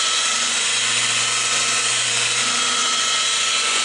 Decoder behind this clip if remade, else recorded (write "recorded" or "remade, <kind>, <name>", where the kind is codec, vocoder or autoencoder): remade, vocoder, Vocos